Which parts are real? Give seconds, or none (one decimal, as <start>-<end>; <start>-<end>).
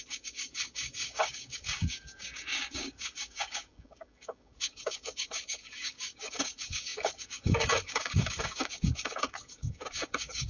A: none